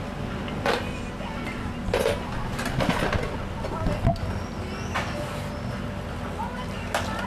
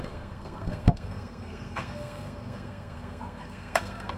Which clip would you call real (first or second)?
first